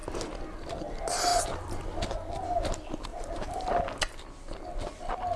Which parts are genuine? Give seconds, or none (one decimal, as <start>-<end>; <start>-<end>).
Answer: 0.0-1.3; 2.3-3.1; 3.8-5.4